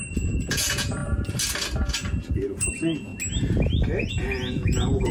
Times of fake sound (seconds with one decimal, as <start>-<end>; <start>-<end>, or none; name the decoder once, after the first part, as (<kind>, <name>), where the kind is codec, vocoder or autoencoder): 0.0-1.0 (vocoder, Vocos); 2.3-3.1; 4.1-5.1